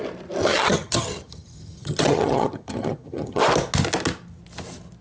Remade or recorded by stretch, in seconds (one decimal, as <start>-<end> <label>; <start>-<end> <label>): 0.0-0.4 recorded; 0.4-3.4 remade; 3.4-5.0 recorded